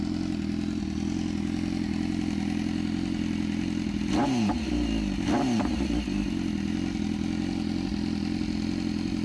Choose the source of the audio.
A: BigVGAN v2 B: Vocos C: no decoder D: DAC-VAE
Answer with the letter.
C